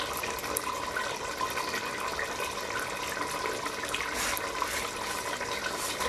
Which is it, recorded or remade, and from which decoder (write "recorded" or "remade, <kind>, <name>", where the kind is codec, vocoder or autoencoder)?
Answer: recorded